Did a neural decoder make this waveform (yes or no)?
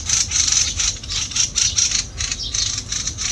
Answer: no